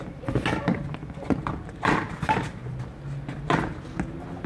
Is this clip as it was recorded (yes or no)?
yes